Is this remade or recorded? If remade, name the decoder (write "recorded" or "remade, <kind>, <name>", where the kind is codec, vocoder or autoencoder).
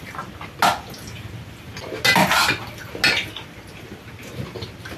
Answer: recorded